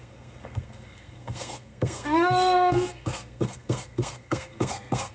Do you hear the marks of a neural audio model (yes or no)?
yes